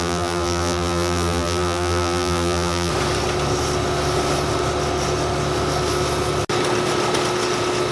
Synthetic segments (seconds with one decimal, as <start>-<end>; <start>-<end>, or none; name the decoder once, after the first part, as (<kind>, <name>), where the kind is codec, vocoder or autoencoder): 0.0-2.9 (vocoder, BigVGAN v2)